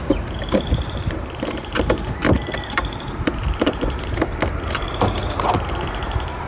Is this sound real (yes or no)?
no